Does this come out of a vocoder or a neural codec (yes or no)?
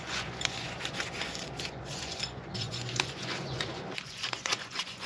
yes